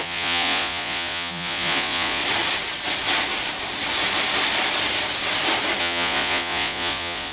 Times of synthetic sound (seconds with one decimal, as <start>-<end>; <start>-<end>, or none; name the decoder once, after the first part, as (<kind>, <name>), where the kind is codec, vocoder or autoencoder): 0.0-2.2 (vocoder, Vocos); 5.8-7.3